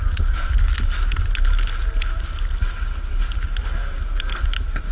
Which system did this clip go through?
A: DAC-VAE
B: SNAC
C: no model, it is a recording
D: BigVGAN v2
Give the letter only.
C